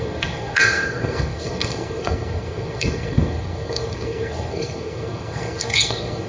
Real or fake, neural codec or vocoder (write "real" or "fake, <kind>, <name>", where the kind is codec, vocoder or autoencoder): fake, codec, SNAC